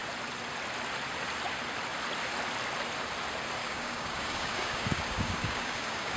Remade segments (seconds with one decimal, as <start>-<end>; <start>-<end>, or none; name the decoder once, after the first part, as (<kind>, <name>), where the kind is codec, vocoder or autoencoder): 3.6-6.2 (codec, DAC)